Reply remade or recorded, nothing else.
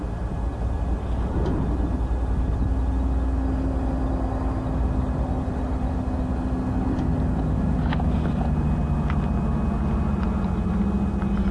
recorded